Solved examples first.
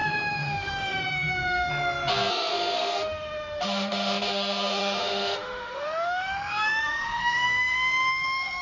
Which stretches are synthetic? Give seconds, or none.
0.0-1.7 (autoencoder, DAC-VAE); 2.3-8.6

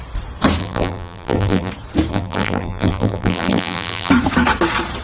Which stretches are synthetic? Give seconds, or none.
0.6-1.7 (vocoder, BigVGAN v2); 2.1-4.1

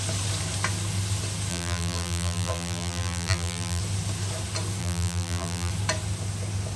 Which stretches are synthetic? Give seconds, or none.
1.5-3.8 (vocoder, BigVGAN v2); 4.8-5.7